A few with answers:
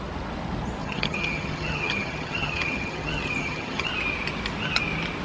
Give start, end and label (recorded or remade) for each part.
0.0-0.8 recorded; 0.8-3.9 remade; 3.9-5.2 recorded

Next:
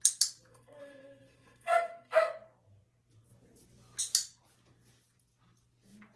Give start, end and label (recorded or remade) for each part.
0.0-0.5 recorded; 0.5-2.3 remade; 2.3-6.2 recorded